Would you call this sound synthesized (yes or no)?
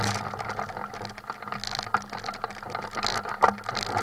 no